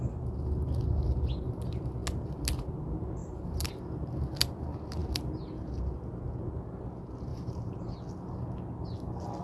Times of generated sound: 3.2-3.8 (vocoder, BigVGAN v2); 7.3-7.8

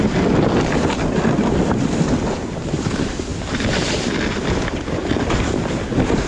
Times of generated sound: none

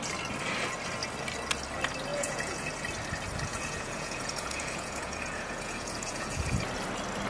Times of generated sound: 2.1-2.7 (vocoder, Vocos); 3.5-6.6

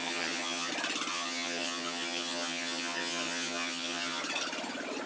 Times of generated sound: 0.0-0.7 (vocoder, HiFi-GAN); 1.1-4.2

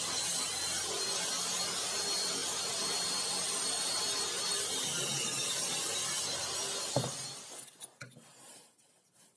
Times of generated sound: none

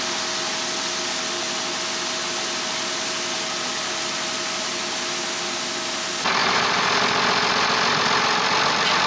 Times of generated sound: 6.4-6.9 (vocoder, BigVGAN v2)

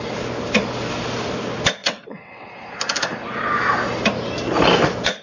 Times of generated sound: 1.8-2.5 (vocoder, WaveNeXt)